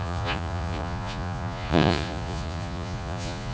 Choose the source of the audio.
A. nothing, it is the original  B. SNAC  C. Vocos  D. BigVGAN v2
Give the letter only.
C